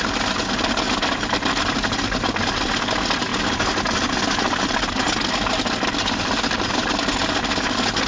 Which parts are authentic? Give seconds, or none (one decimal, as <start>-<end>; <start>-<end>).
0.0-8.1